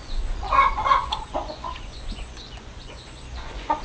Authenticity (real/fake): fake